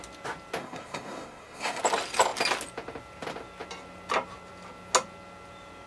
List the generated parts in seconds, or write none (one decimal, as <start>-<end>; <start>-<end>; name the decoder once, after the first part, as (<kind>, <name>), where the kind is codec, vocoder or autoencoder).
0.6-1.8 (codec, SNAC)